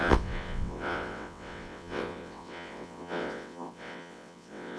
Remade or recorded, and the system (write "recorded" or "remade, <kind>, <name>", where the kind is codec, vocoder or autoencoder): remade, vocoder, WaveNeXt